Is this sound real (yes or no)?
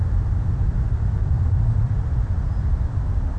yes